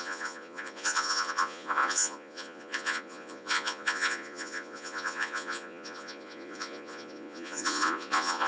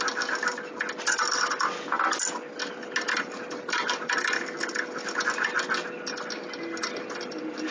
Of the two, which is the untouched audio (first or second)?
second